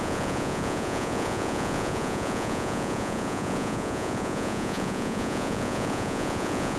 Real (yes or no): no